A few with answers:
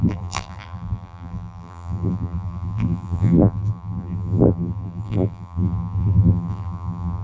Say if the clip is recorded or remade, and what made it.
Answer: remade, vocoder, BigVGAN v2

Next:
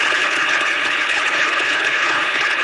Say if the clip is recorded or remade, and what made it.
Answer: remade, codec, HILCodec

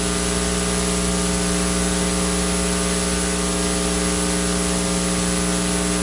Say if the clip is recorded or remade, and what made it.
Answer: recorded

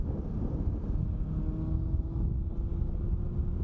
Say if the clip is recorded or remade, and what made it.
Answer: recorded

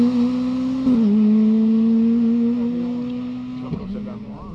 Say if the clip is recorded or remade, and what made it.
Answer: recorded